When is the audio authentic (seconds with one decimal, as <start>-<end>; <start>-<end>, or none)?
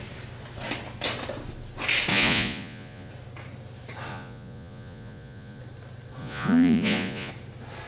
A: 0.0-2.1; 3.1-4.1; 5.6-6.2; 7.3-7.9